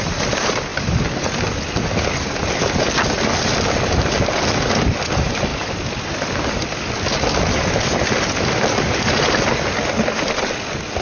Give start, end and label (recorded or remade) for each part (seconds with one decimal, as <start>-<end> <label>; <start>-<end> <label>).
0.0-11.0 recorded